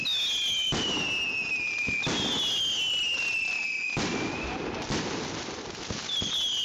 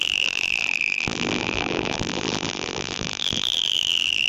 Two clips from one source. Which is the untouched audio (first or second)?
first